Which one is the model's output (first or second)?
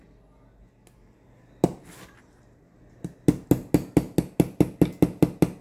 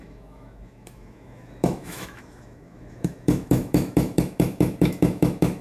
second